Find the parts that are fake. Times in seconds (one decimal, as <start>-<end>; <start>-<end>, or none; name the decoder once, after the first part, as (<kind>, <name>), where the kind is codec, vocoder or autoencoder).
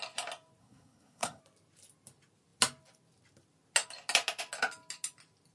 0.6-1.4 (codec, SNAC)